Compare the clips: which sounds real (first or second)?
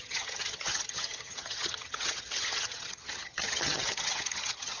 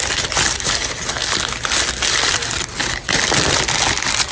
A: second